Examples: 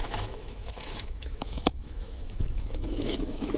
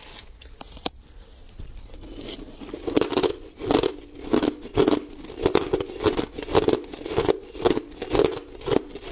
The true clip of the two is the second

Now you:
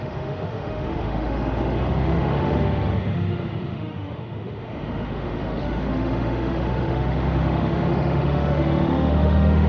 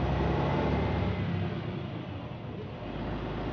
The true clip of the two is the second